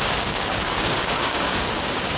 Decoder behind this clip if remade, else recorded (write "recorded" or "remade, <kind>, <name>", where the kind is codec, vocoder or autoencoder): remade, codec, DAC